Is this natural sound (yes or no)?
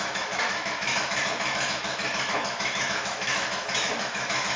no